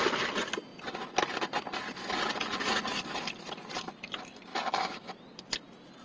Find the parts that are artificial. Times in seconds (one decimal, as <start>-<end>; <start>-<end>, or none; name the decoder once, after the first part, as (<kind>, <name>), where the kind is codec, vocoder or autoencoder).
4.5-5.1 (autoencoder, DAC-VAE)